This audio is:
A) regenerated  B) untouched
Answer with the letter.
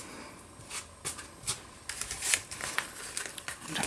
B